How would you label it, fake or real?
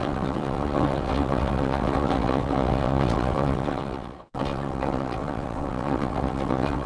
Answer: fake